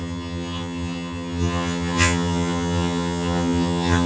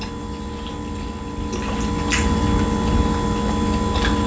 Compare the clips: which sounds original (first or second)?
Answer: second